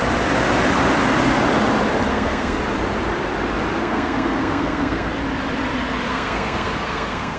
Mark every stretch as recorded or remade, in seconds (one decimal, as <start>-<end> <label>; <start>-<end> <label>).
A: 0.0-2.1 recorded; 2.1-2.6 remade; 2.6-3.8 recorded; 3.8-5.1 remade; 5.1-6.1 recorded; 6.1-7.4 remade